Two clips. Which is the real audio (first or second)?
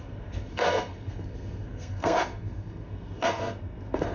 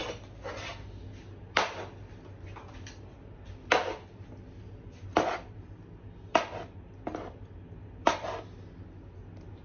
second